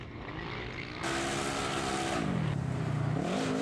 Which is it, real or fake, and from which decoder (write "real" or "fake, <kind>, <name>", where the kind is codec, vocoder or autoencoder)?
real